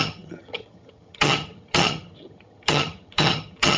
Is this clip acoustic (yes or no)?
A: no